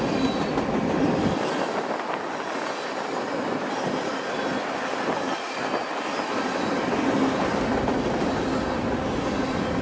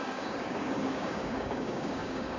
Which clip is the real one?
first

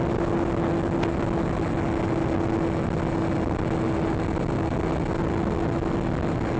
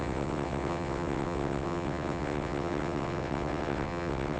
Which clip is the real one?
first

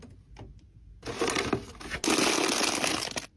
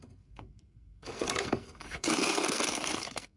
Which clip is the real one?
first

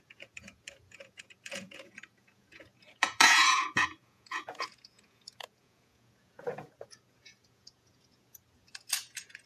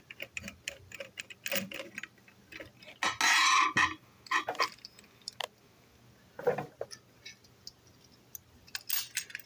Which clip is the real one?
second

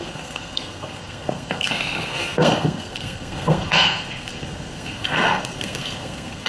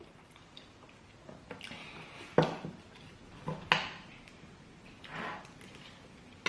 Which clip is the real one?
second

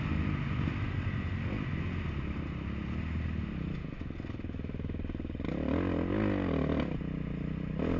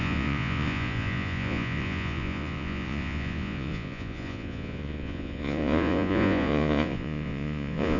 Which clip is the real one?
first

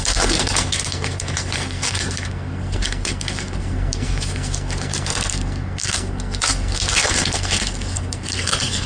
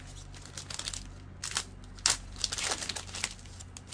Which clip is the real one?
second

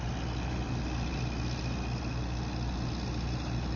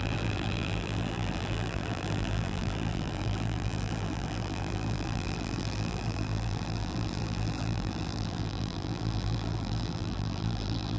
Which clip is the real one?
first